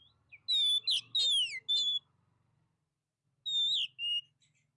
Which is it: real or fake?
real